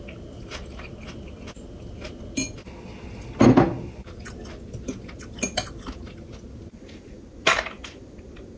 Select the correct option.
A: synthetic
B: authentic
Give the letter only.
B